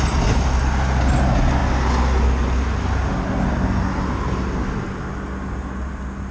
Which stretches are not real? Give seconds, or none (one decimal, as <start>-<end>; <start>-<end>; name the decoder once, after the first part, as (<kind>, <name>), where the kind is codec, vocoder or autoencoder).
none